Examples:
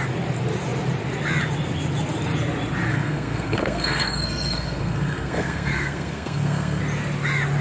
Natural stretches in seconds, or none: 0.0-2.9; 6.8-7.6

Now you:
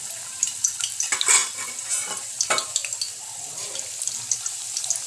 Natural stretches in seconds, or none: 0.0-5.1

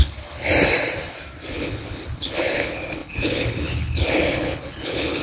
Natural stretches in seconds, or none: 0.5-1.5

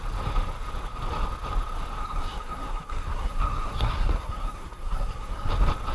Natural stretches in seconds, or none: 0.0-2.0; 5.5-5.9

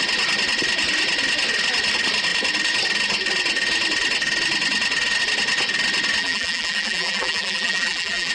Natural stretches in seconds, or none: 0.0-6.2

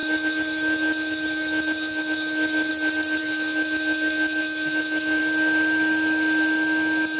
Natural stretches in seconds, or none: 2.7-3.2; 5.2-7.2

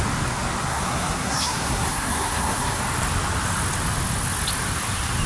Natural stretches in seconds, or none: 0.0-0.7; 2.8-5.3

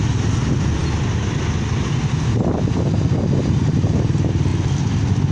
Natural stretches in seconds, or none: 0.0-5.3